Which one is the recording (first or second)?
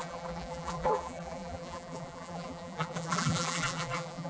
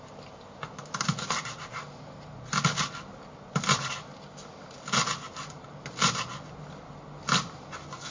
second